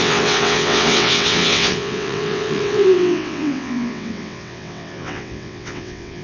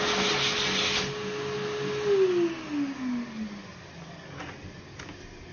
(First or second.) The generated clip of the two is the first